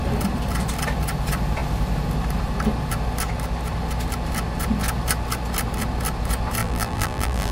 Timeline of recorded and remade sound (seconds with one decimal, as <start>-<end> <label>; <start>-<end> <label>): 0.0-6.6 recorded; 6.6-7.5 remade

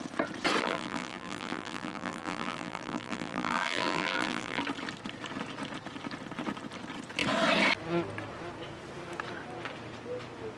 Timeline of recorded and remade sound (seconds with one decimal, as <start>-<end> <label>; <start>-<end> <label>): 0.0-0.6 recorded; 0.6-4.6 remade; 4.6-10.6 recorded

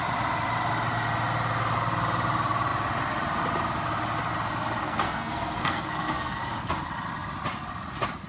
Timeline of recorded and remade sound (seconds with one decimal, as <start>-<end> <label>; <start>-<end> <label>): 0.0-4.8 recorded; 4.8-6.4 remade; 6.4-8.3 recorded

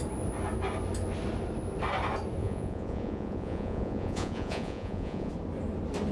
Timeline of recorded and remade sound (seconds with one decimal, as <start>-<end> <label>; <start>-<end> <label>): 0.0-2.4 recorded; 2.4-5.3 remade; 5.3-6.1 recorded

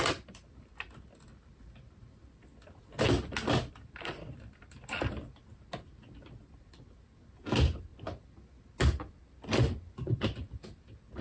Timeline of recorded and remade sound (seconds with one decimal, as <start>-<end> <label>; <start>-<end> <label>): 0.0-11.2 recorded

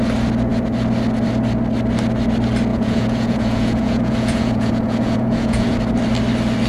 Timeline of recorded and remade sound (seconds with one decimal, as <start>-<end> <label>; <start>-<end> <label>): 0.0-2.7 recorded; 2.7-5.8 remade; 5.8-6.7 recorded

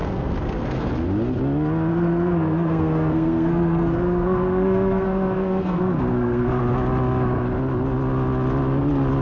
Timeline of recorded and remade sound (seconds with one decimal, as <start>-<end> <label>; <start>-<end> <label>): 0.0-0.9 remade; 0.9-1.9 recorded; 1.9-6.6 remade; 6.6-9.2 recorded

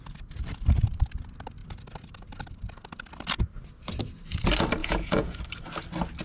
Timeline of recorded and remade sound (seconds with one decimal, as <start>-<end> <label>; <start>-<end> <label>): 0.0-4.8 recorded; 4.8-5.4 remade; 5.4-6.2 recorded